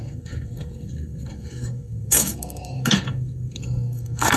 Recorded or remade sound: remade